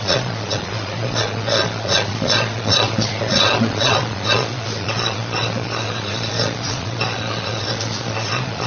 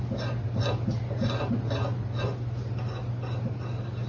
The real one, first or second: second